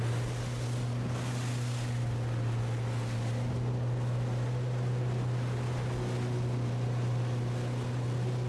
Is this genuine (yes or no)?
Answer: yes